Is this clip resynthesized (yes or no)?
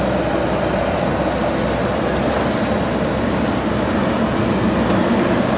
no